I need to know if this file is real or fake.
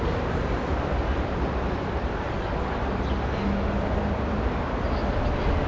real